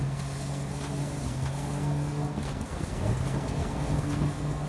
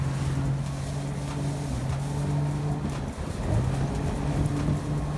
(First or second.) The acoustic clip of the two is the second